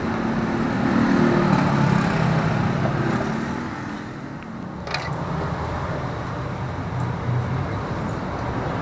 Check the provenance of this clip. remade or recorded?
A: recorded